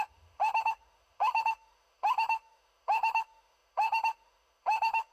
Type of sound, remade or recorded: remade